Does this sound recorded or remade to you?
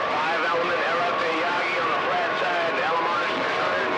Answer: remade